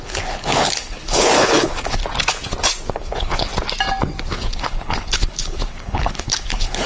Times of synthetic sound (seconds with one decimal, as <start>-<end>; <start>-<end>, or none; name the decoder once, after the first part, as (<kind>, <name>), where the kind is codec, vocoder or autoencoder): 0.0-2.0 (codec, HILCodec); 3.0-3.5; 4.2-6.9